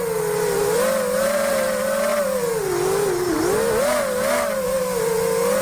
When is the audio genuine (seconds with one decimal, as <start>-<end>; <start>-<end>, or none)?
0.0-5.6